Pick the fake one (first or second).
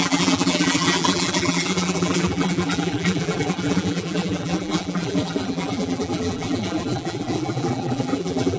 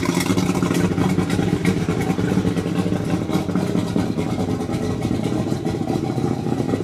first